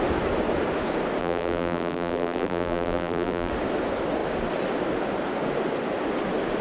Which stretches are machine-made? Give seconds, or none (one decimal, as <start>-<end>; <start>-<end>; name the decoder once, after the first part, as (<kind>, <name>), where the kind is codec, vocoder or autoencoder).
1.2-3.5 (vocoder, BigVGAN v2)

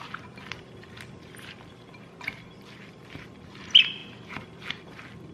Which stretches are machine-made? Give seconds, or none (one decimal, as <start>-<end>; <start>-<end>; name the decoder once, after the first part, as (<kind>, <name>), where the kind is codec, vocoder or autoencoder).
none